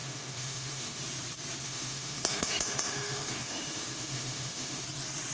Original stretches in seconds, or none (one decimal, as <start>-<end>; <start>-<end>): 1.0-1.6; 4.8-5.3